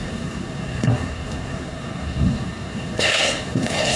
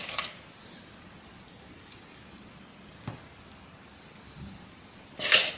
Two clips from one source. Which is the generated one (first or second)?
first